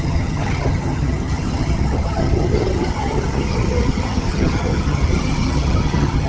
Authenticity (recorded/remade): remade